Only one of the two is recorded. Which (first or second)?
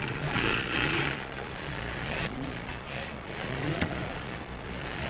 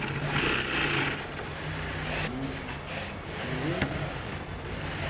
second